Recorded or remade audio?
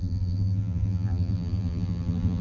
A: remade